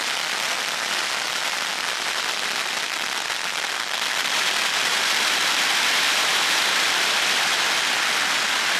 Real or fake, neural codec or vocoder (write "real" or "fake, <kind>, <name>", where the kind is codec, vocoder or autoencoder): fake, vocoder, BigVGAN v2